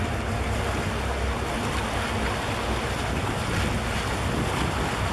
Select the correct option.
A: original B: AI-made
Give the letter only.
A